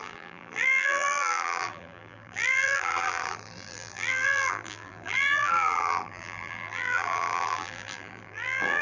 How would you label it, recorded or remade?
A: remade